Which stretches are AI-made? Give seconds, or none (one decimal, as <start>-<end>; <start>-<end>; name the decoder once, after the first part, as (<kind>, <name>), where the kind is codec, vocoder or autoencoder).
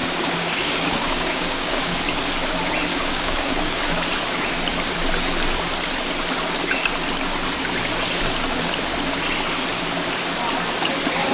0.0-1.8 (codec, DAC); 2.9-3.8